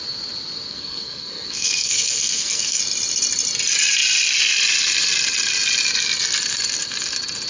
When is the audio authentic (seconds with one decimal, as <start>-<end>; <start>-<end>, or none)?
0.0-0.7; 2.8-7.5